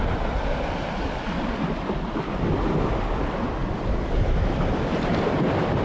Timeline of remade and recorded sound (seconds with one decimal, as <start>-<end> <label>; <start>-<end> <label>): 0.0-3.6 recorded; 3.6-5.8 remade